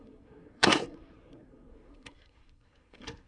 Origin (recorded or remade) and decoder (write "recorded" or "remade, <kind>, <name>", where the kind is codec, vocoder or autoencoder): remade, codec, SNAC